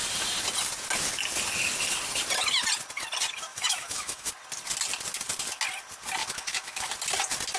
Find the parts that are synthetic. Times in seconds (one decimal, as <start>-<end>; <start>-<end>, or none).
3.5-4.3; 6.2-6.9